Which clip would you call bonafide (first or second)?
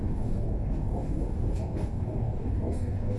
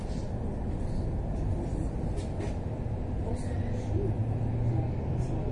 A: second